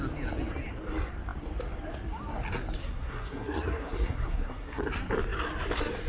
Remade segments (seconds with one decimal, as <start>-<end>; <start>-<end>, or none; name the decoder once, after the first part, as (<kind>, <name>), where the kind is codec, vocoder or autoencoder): 2.8-4.8 (codec, SNAC)